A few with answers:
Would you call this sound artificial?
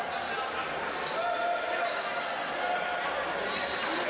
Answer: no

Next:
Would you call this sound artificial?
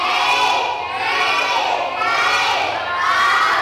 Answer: no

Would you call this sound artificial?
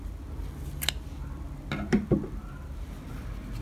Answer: no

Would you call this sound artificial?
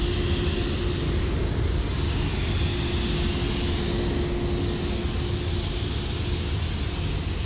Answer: no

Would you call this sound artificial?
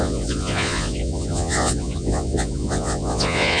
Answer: yes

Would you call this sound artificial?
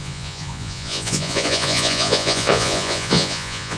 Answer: yes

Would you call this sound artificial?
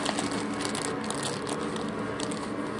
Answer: no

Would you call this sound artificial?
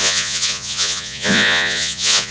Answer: yes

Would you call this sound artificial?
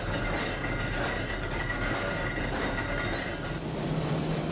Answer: no